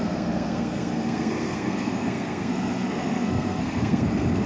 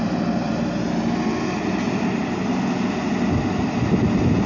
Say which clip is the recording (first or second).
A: second